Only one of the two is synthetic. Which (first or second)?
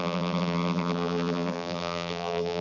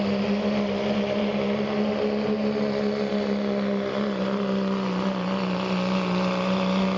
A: first